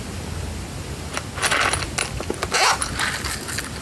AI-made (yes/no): no